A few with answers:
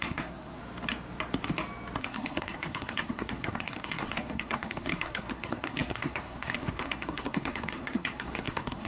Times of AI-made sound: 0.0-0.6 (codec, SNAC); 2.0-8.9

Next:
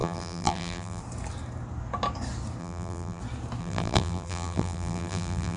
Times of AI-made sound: 0.0-1.0 (vocoder, BigVGAN v2); 2.6-3.2; 3.6-5.6

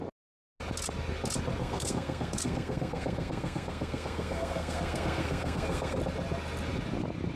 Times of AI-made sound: 1.6-6.0 (codec, SNAC)

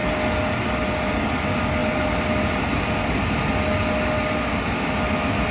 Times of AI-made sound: none

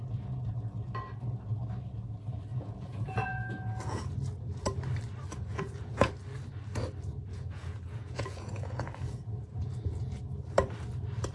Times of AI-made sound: 2.5-4.0 (vocoder, Vocos); 5.5-6.1; 7.3-10.2

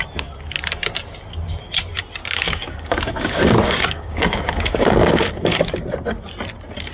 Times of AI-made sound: 2.2-5.6 (codec, DAC)